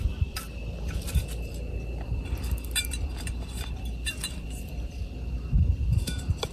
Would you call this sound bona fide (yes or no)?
no